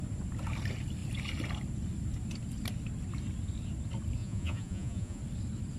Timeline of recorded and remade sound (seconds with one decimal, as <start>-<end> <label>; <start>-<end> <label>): 0.0-4.2 recorded; 4.2-5.2 remade; 5.2-5.8 recorded